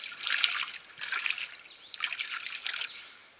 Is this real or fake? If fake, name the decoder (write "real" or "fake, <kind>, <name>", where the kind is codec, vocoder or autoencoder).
real